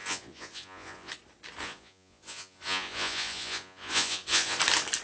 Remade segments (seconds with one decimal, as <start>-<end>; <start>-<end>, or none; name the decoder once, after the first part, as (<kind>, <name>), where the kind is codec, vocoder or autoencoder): 0.0-1.1 (vocoder, Vocos); 1.6-4.6